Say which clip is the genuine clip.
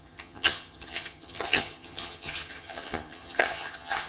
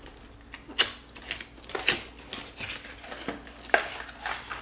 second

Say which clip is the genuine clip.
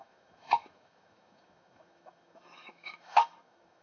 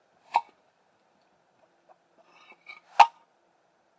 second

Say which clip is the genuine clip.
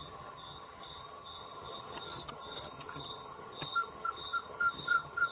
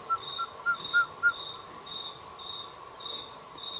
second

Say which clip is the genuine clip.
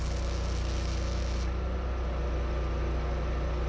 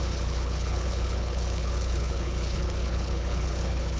first